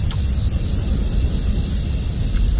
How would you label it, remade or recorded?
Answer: recorded